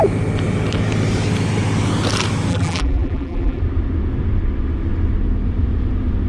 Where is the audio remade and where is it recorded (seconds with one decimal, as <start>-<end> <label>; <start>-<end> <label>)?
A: 0.0-2.5 recorded; 2.5-3.6 remade; 3.6-6.3 recorded